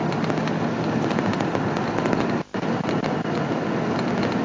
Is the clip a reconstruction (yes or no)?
no